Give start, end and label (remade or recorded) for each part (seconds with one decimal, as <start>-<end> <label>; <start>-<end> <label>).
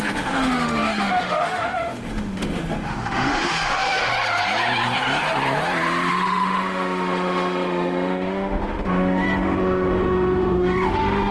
0.0-4.1 remade; 4.1-6.1 recorded; 6.1-11.3 remade